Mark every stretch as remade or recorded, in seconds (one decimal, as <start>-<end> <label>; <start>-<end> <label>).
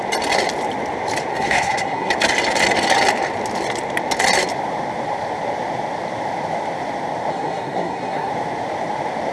0.0-1.3 recorded; 1.3-2.1 remade; 2.1-7.3 recorded; 7.3-8.3 remade; 8.3-9.3 recorded